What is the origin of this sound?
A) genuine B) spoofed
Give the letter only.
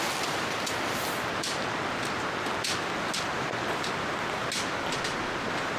A